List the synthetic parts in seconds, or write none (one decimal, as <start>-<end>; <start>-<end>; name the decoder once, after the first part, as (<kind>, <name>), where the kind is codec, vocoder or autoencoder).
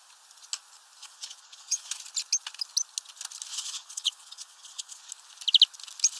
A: 1.0-1.9 (vocoder, Vocos); 3.5-5.1